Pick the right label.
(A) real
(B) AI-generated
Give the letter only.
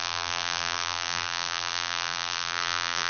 B